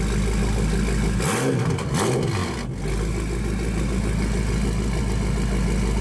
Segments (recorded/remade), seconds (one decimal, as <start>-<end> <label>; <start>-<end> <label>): 0.0-6.0 recorded